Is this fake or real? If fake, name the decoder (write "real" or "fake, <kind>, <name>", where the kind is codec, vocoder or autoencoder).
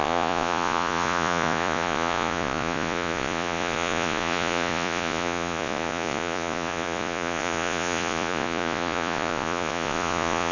fake, vocoder, Vocos